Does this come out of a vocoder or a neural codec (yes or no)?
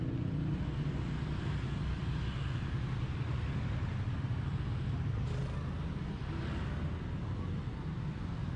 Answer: no